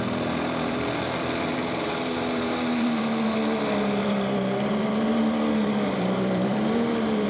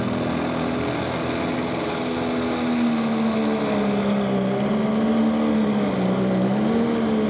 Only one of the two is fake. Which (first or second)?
first